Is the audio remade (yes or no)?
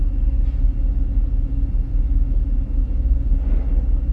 no